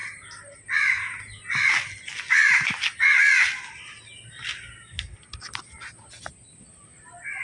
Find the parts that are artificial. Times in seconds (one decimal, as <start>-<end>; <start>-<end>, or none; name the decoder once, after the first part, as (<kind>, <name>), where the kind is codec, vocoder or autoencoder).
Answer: none